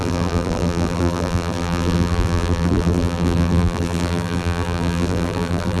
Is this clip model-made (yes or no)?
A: yes